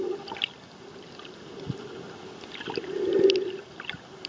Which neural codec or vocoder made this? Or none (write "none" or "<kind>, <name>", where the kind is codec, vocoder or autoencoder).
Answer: none